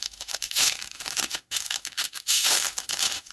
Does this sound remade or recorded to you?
remade